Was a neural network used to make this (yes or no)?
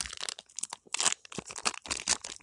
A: no